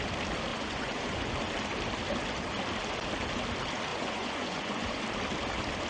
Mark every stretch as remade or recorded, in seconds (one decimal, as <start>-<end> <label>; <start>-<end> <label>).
0.0-0.5 recorded; 0.5-1.3 remade; 1.3-3.9 recorded; 3.9-5.0 remade; 5.0-5.9 recorded